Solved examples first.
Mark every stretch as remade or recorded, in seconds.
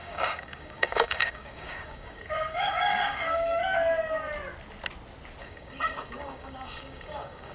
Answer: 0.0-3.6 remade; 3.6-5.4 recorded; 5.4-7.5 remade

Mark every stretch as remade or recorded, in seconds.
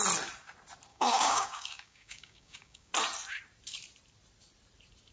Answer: 0.0-0.9 recorded; 0.9-2.9 remade; 2.9-5.1 recorded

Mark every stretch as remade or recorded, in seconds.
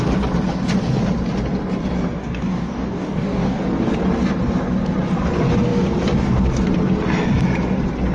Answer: 0.0-2.2 recorded; 2.2-3.6 remade; 3.6-8.1 recorded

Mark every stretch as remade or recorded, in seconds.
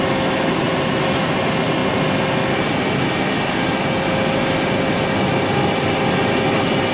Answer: 0.0-6.9 recorded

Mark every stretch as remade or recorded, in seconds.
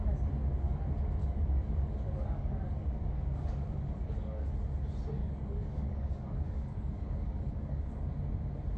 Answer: 0.0-1.2 recorded; 1.2-4.5 remade; 4.5-5.2 recorded; 5.2-8.1 remade; 8.1-8.8 recorded